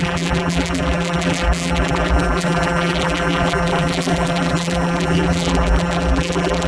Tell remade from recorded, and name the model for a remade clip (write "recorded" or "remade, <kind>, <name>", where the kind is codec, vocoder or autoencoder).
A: remade, vocoder, BigVGAN v2